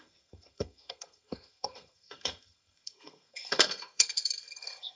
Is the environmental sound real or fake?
fake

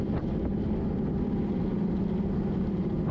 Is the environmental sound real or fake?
real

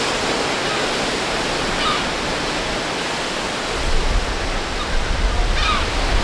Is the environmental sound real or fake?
real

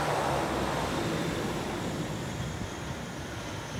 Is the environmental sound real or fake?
real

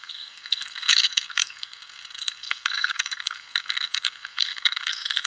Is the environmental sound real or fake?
fake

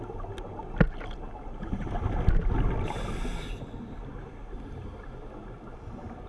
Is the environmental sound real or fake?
real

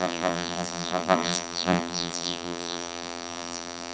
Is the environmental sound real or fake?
fake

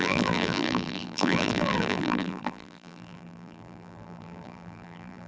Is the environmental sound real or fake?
fake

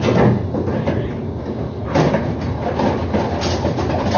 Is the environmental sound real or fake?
real